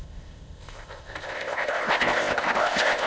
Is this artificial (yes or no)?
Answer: yes